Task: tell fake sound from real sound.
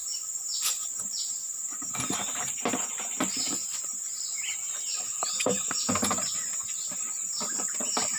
fake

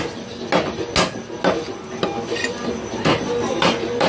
real